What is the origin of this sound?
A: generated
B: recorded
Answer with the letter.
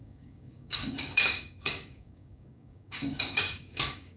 A